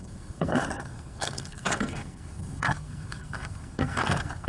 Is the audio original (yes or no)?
no